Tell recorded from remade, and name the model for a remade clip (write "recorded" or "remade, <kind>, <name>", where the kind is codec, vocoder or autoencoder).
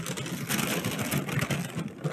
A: recorded